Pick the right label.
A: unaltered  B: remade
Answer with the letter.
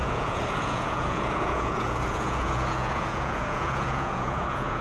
B